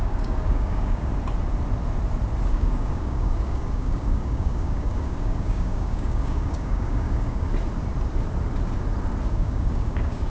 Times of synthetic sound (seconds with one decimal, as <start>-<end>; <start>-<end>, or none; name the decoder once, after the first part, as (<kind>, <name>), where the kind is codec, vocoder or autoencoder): 0.0-1.1 (codec, DAC); 2.5-7.5; 9.3-10.3